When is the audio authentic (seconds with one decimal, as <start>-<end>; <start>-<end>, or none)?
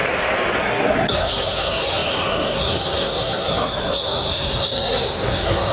0.0-0.6